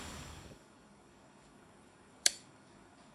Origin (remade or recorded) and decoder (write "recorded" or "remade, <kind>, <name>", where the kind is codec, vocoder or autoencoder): remade, codec, DAC